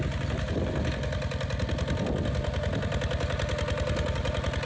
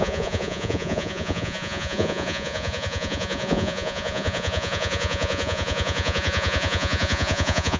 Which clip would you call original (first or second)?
first